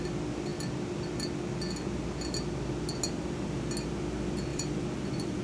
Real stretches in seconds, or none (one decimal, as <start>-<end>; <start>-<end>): 0.0-4.5